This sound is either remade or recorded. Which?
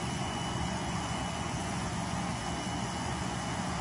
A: remade